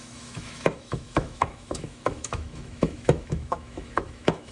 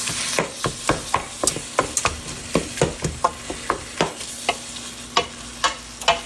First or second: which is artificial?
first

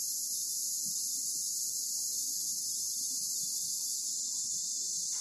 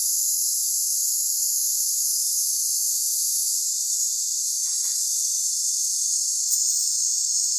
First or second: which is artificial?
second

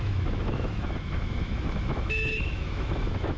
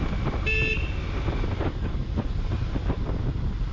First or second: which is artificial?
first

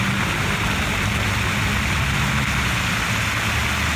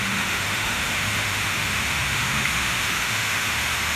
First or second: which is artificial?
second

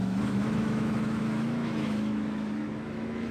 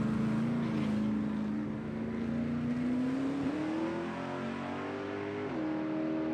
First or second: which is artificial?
first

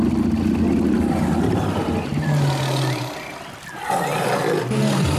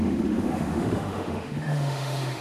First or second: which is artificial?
second